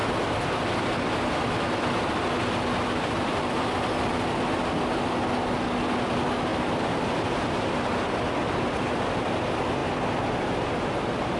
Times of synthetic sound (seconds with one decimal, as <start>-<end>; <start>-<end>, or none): none